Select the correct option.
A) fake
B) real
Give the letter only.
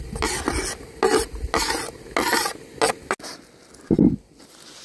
B